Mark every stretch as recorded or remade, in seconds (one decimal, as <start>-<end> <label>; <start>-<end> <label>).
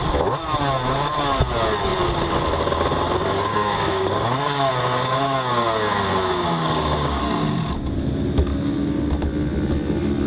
0.0-3.5 recorded; 3.5-4.7 remade; 4.7-6.1 recorded; 6.1-7.2 remade; 7.2-8.5 recorded; 8.5-9.0 remade; 9.0-10.3 recorded